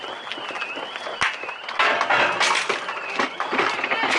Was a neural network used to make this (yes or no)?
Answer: no